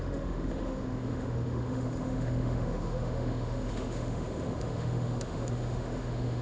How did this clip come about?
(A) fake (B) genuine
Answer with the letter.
A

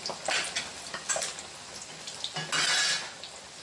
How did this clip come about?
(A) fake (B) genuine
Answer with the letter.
B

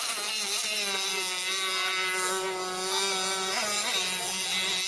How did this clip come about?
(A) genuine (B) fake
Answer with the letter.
A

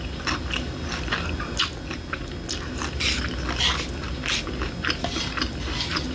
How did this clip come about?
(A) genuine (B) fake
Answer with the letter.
A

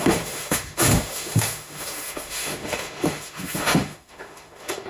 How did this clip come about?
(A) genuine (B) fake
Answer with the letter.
B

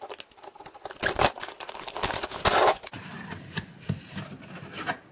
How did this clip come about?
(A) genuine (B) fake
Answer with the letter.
A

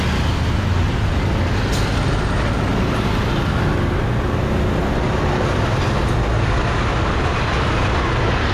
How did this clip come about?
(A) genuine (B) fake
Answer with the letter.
A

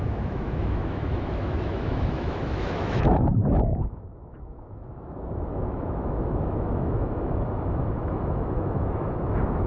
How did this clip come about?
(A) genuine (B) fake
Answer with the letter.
B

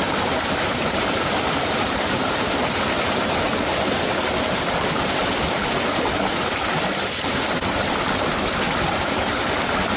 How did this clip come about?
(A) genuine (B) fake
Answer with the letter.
A